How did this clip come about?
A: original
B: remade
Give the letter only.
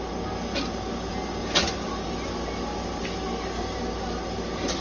A